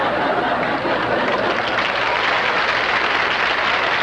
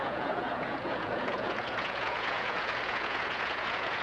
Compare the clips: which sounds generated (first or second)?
second